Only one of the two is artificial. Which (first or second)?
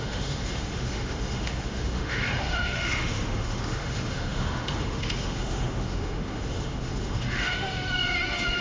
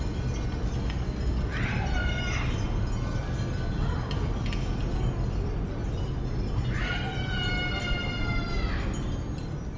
first